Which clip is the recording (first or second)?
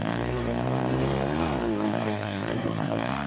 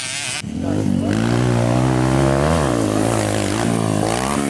second